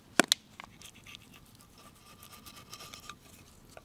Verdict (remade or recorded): recorded